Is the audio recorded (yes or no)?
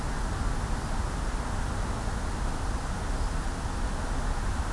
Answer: yes